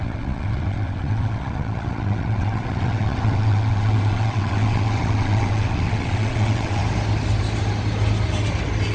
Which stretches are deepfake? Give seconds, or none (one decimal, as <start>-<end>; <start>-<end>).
0.0-6.8